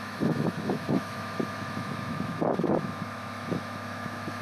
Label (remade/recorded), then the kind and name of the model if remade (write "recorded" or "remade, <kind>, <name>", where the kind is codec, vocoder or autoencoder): remade, autoencoder, DAC-VAE